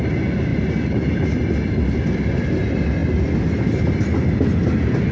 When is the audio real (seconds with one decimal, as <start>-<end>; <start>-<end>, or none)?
0.0-5.1

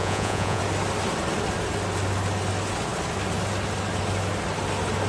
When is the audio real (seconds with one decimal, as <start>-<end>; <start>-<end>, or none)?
0.6-5.1

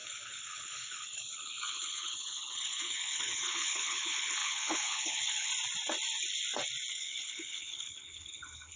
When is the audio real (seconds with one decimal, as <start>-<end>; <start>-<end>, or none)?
5.5-6.9

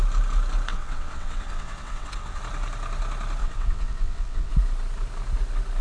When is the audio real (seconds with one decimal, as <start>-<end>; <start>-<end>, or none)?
0.0-0.7; 2.4-3.4; 4.5-5.8